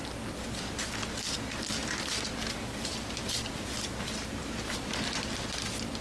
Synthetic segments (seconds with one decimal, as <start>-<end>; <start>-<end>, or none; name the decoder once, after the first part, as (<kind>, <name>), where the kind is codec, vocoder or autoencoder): 0.0-0.7 (vocoder, BigVGAN v2); 1.8-5.4